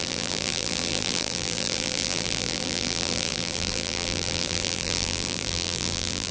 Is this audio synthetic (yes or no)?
yes